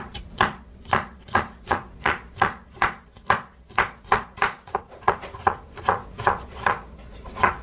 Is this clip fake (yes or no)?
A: yes